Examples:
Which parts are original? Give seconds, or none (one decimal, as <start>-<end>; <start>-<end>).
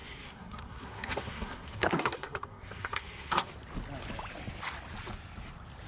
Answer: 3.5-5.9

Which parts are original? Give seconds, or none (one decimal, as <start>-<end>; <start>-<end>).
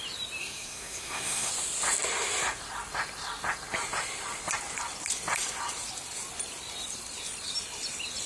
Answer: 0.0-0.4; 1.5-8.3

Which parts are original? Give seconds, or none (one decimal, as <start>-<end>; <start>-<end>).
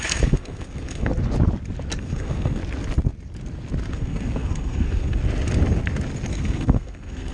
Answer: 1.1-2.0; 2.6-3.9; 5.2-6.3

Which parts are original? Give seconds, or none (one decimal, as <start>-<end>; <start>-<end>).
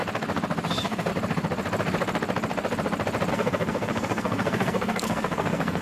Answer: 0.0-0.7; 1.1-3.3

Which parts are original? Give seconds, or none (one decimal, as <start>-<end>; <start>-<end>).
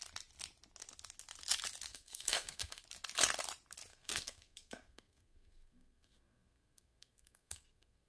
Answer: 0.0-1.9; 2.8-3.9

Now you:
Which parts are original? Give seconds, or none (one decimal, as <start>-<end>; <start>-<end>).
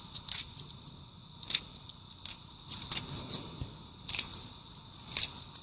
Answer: 0.0-5.6